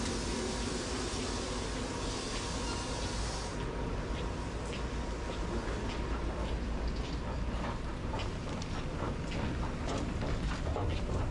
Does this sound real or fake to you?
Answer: real